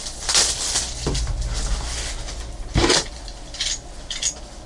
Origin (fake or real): real